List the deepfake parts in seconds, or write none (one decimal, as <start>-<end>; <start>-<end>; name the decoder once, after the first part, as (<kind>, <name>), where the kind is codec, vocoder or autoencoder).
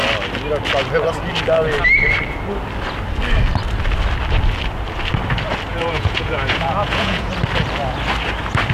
5.7-7.3 (vocoder, Vocos)